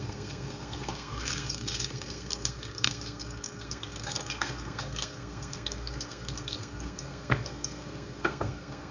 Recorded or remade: remade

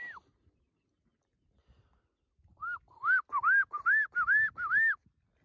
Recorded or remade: recorded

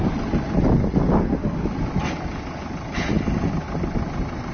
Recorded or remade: recorded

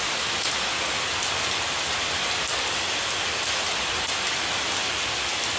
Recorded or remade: recorded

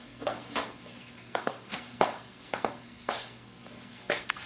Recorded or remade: remade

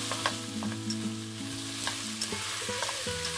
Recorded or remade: recorded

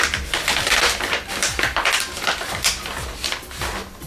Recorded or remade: recorded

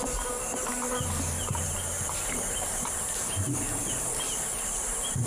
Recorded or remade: remade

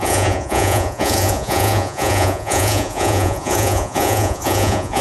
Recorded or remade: remade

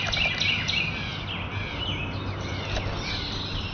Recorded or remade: recorded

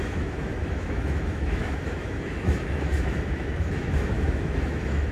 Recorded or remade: remade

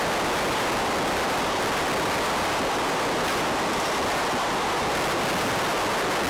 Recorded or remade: recorded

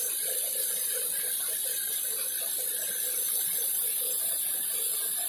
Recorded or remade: recorded